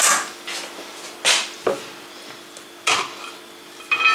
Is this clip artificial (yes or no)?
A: no